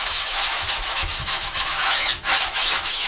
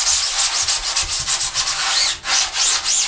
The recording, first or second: second